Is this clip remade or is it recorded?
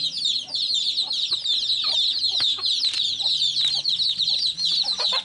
recorded